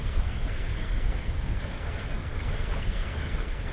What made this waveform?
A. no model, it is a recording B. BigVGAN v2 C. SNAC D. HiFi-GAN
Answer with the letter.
C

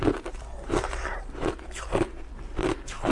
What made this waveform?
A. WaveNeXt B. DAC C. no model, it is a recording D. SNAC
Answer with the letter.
C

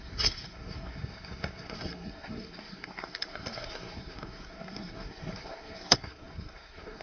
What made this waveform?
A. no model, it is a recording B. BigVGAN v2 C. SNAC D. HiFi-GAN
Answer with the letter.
C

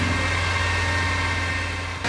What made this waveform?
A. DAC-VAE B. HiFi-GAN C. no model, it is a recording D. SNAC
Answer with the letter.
C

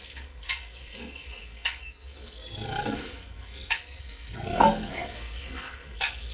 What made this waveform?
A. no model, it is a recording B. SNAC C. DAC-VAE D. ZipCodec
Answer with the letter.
B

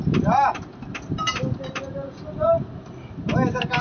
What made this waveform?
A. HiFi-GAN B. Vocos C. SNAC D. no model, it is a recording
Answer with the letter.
D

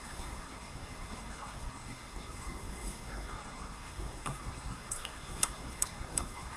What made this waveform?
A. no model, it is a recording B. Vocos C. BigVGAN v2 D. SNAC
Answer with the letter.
D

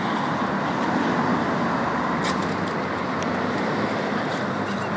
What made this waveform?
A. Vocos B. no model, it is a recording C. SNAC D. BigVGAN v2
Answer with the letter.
B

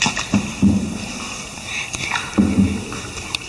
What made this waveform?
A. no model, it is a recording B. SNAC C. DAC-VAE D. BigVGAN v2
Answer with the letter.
A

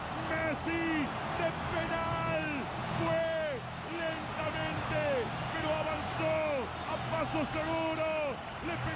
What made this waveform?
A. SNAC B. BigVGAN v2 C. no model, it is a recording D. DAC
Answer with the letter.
C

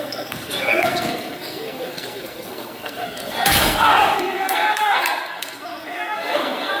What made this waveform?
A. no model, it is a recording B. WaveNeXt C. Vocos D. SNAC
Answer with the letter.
D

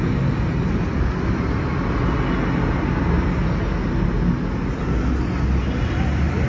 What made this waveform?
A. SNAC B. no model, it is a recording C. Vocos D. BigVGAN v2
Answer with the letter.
B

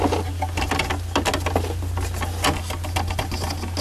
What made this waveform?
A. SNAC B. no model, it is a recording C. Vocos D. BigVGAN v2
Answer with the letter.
B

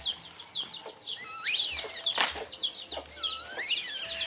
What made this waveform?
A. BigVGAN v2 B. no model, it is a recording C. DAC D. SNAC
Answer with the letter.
B